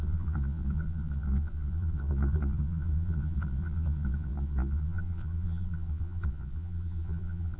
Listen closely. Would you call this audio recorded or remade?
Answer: remade